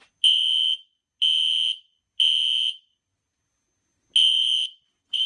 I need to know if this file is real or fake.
real